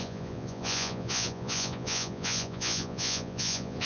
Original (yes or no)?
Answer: no